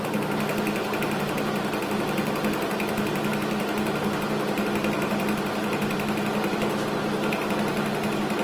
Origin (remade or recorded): recorded